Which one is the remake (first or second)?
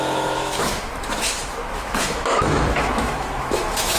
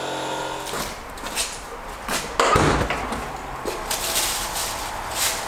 first